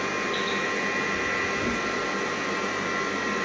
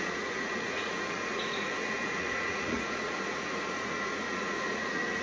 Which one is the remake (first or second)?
second